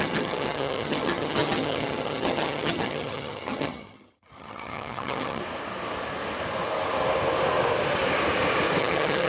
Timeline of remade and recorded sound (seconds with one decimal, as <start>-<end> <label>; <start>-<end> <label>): 0.0-5.4 remade; 5.4-8.8 recorded; 8.8-9.3 remade